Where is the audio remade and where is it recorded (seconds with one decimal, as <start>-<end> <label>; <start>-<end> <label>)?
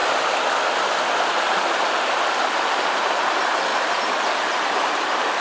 0.0-3.2 recorded; 3.2-5.4 remade